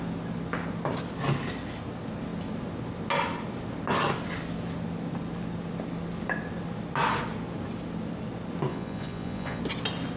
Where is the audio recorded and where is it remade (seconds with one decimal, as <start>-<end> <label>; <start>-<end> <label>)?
0.0-8.7 recorded; 8.7-9.6 remade; 9.6-10.2 recorded